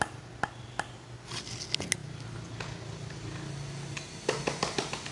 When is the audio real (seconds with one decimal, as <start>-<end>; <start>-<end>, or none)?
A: 0.0-5.1

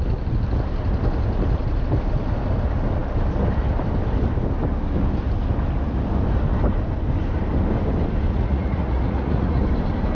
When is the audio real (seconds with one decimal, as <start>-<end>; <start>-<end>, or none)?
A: 0.0-8.3; 9.6-10.1

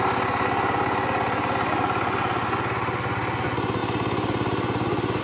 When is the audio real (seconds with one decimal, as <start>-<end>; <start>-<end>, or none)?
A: 0.0-5.2

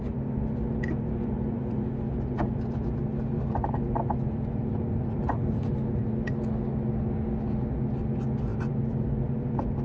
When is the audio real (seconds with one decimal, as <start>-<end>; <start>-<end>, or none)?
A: 0.0-0.7; 5.7-8.5

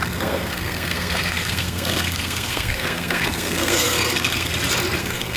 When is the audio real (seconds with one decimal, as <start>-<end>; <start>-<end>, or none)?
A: 4.5-5.0

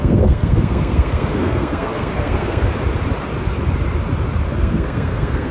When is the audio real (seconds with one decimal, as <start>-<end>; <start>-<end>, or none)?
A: 2.7-4.6